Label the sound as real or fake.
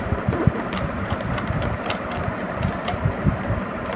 fake